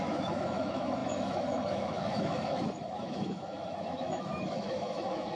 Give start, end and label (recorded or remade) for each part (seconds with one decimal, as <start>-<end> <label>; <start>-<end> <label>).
0.0-5.4 remade